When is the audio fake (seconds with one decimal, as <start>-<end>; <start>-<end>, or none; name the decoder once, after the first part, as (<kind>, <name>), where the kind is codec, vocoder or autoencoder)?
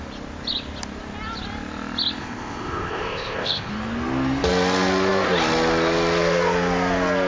2.2-3.7 (codec, ZipCodec)